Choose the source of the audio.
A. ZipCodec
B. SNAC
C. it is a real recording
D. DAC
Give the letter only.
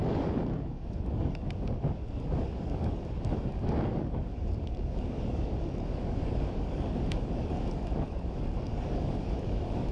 D